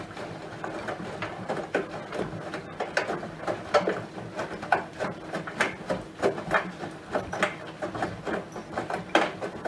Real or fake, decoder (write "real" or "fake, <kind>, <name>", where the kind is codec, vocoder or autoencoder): real